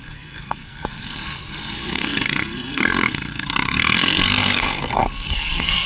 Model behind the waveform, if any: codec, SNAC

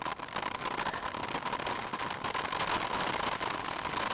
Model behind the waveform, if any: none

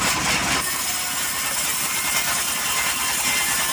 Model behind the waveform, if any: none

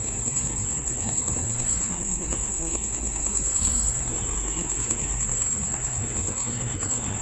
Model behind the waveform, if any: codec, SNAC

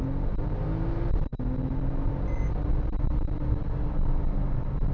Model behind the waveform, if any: none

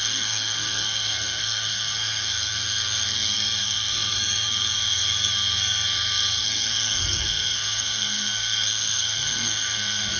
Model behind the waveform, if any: codec, SNAC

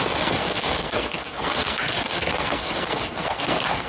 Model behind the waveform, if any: codec, SNAC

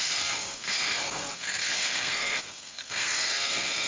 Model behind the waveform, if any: codec, SNAC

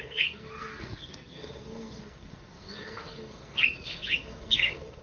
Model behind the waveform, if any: codec, SNAC